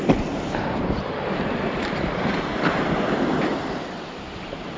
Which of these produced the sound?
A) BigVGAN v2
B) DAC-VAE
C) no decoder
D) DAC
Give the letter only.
A